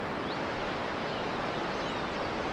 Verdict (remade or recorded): recorded